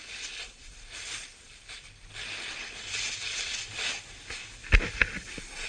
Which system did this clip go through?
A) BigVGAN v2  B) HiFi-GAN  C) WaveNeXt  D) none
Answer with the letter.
D